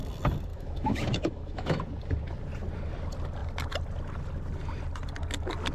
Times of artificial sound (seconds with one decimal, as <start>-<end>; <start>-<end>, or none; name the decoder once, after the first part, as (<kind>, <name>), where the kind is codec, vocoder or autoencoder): 0.5-1.8 (autoencoder, DAC-VAE)

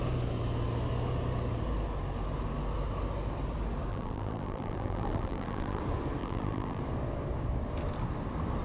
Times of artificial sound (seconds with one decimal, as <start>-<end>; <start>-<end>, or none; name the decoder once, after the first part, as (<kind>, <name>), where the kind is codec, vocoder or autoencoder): 3.9-5.8 (vocoder, BigVGAN v2); 6.2-6.8

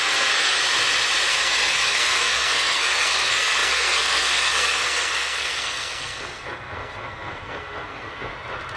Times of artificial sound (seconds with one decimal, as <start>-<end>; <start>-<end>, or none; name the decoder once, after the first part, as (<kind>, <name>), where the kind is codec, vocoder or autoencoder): 0.0-0.6 (codec, SNAC); 1.3-8.3

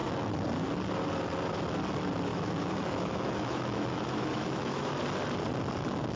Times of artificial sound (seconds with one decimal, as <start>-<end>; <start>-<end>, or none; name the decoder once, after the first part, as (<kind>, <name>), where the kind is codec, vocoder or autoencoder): 2.3-4.9 (autoencoder, DAC-VAE)

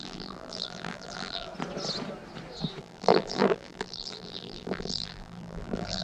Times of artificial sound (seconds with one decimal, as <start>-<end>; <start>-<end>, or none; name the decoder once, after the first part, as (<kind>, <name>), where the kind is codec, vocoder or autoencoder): 0.0-1.5 (vocoder, BigVGAN v2); 2.8-6.0

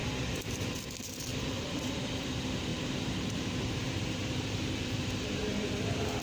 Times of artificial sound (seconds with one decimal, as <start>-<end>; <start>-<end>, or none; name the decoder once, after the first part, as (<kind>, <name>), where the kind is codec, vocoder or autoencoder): 1.3-2.1 (vocoder, BigVGAN v2); 2.7-5.7

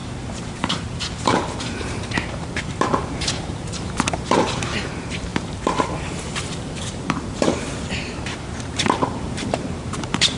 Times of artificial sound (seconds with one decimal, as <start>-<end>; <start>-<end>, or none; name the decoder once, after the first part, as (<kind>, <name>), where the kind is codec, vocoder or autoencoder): 0.0-10.4 (vocoder, BigVGAN v2)

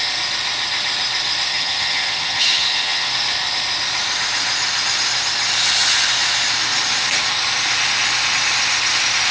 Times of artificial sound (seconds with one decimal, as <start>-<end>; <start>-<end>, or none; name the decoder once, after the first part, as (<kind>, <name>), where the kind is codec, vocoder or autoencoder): 1.5-3.1 (vocoder, HiFi-GAN)